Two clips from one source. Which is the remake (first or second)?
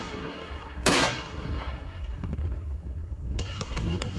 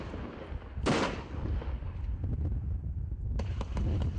first